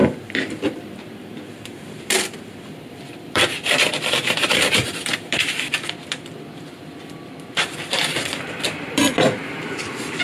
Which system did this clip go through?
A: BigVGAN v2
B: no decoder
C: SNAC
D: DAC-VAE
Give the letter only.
A